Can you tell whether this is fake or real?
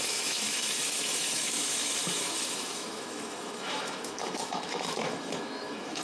fake